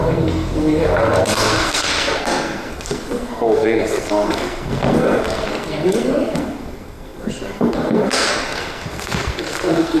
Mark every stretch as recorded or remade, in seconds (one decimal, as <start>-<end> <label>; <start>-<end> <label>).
0.0-10.0 remade